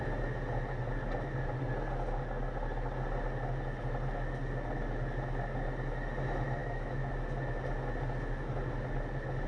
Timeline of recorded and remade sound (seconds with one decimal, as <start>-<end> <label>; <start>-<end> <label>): 0.0-6.6 recorded; 6.6-7.1 remade; 7.1-9.5 recorded

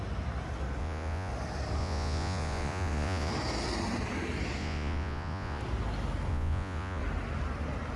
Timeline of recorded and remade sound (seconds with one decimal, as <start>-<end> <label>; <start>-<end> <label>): 0.0-0.8 recorded; 0.8-1.3 remade; 1.3-1.8 recorded; 1.8-3.3 remade; 3.3-4.6 recorded; 4.6-5.6 remade; 5.6-6.3 recorded; 6.3-7.0 remade; 7.0-8.0 recorded

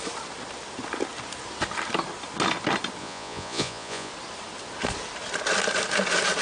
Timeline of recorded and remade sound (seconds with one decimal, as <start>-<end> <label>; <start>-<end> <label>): 0.0-3.0 recorded; 3.0-4.1 remade; 4.1-6.4 recorded

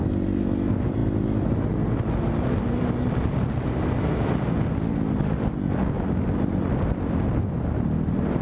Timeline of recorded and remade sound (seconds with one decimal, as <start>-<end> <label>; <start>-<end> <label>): 0.0-8.4 recorded

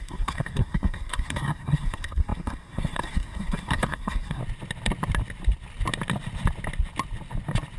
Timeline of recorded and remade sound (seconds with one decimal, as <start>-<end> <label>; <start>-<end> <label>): 0.0-4.4 remade; 4.4-7.8 recorded

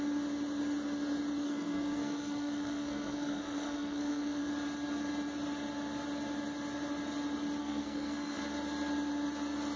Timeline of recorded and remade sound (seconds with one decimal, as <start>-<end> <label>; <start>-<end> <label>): 0.0-1.4 recorded; 1.4-4.5 remade; 4.5-7.6 recorded; 7.6-8.4 remade; 8.4-9.8 recorded

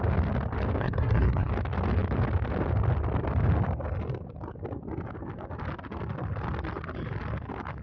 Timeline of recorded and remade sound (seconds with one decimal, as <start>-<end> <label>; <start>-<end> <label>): 0.0-0.8 recorded; 0.8-1.5 remade; 1.5-7.8 recorded